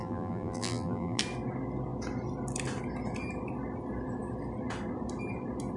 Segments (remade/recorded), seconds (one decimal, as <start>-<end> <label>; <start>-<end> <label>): 0.0-1.2 remade; 1.2-5.8 recorded